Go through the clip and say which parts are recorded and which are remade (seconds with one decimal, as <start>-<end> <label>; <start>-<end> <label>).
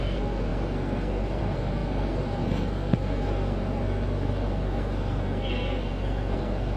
0.0-6.8 remade